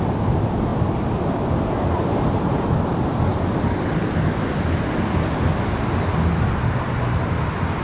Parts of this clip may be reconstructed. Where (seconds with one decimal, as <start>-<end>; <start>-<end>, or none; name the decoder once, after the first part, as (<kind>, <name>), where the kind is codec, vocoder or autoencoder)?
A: none